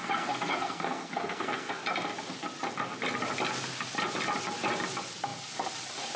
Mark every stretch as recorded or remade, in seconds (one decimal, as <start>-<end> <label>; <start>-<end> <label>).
0.0-1.7 remade; 1.7-6.2 recorded